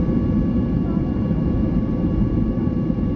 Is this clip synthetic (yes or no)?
yes